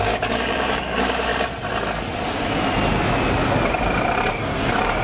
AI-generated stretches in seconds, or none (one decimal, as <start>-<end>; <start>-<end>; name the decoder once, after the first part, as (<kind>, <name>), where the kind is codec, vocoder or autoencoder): 0.0-1.3 (codec, DAC); 4.3-5.0